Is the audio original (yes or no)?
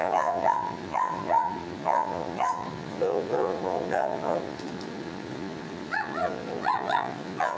no